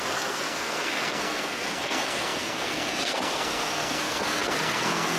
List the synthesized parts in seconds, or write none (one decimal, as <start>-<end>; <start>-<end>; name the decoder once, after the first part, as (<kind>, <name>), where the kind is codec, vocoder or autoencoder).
0.0-5.2 (codec, SNAC)

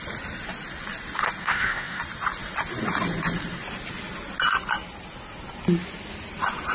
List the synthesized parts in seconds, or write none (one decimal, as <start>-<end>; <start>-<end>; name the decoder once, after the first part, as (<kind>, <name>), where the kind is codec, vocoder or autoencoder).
1.4-2.0 (codec, SNAC)

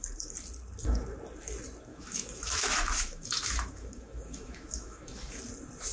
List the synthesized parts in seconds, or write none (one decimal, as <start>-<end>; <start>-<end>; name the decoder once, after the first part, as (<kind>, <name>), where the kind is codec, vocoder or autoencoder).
1.9-5.4 (autoencoder, DAC-VAE)

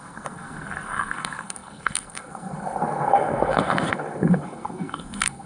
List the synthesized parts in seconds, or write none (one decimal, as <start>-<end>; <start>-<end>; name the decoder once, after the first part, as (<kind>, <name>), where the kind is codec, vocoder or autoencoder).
0.0-5.5 (codec, SNAC)